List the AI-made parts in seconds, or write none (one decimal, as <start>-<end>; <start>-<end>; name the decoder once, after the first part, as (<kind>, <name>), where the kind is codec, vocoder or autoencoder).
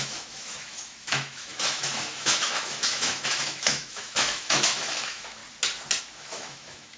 0.0-5.4 (autoencoder, DAC-VAE); 6.0-7.0